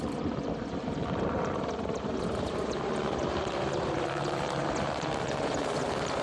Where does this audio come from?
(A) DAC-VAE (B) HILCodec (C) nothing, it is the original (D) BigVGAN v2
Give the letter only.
D